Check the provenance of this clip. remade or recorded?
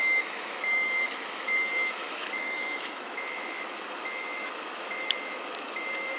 remade